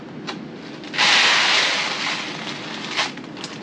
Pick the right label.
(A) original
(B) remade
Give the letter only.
A